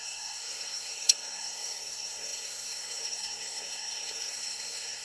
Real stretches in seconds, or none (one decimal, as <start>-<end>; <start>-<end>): none